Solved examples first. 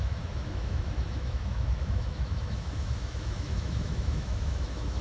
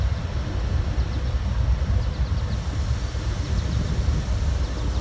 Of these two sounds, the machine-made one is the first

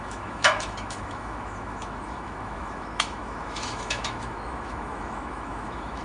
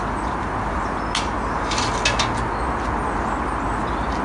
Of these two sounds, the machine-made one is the first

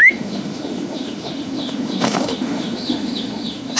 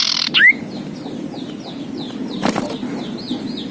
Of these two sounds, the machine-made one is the first